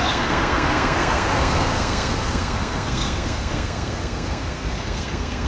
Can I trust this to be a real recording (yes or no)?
no